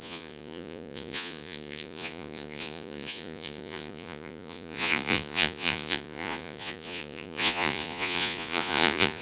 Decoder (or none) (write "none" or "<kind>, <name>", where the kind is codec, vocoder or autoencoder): vocoder, Vocos